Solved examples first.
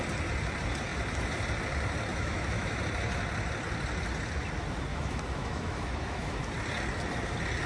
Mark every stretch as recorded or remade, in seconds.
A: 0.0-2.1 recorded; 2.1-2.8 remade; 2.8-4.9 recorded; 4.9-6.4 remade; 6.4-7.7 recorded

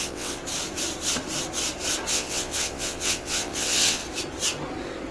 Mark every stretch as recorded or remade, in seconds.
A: 0.0-0.4 remade; 0.4-2.1 recorded; 2.1-4.0 remade; 4.0-5.1 recorded

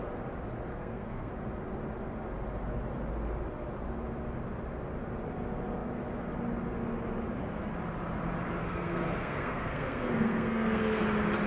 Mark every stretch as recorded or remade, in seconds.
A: 0.0-0.7 recorded; 0.7-1.3 remade; 1.3-8.6 recorded; 8.6-11.0 remade; 11.0-11.5 recorded

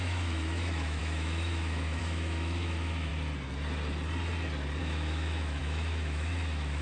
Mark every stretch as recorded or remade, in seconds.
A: 0.0-3.1 remade; 3.1-4.8 recorded; 4.8-6.8 remade